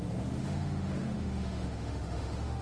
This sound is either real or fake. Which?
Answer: fake